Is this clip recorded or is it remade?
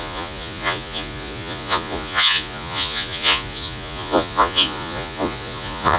remade